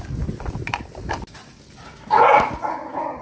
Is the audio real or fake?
real